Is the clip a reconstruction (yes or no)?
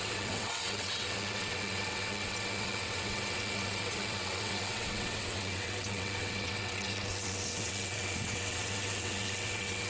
yes